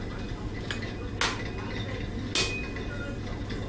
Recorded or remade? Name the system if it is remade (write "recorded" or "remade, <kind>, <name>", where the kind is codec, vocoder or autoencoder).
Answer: recorded